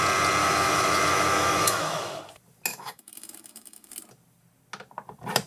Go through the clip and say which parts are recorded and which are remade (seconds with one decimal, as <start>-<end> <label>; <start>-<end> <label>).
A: 0.0-0.4 recorded; 0.4-2.2 remade; 2.2-2.7 recorded; 2.7-3.9 remade; 3.9-5.5 recorded